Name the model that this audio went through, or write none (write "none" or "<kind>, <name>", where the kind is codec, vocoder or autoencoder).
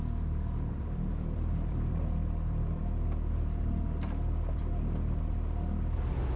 vocoder, BigVGAN v2